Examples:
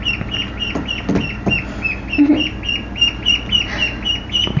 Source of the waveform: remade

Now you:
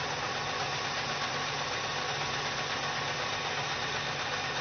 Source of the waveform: recorded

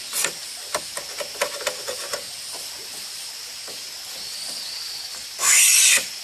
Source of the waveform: recorded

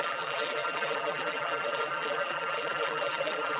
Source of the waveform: remade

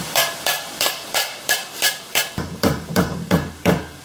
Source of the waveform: remade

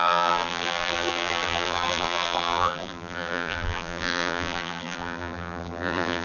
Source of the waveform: remade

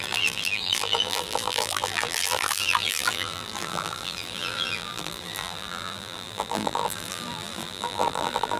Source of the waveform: remade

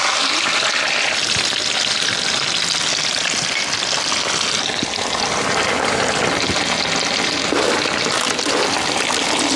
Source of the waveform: recorded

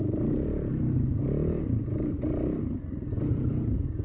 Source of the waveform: remade